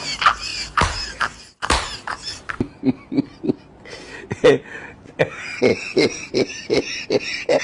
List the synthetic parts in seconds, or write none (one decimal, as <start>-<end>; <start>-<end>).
5.7-7.6